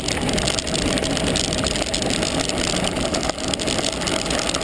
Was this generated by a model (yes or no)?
no